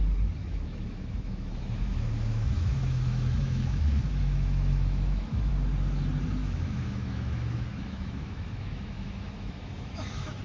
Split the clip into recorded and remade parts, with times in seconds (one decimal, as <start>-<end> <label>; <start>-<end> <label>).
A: 0.0-0.4 recorded; 0.4-5.5 remade; 5.5-6.4 recorded; 6.4-10.4 remade